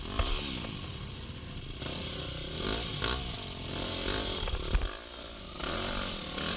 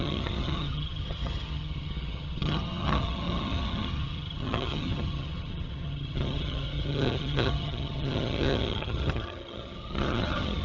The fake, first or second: second